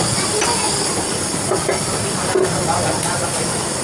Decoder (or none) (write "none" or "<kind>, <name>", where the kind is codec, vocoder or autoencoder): none